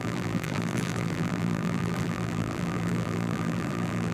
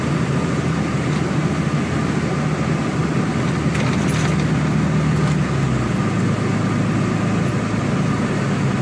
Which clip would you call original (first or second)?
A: second